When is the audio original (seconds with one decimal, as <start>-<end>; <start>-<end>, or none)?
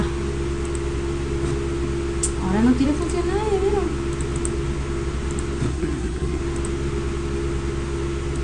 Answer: 0.0-5.7; 6.4-8.4